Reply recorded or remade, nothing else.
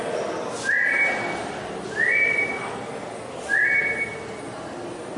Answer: recorded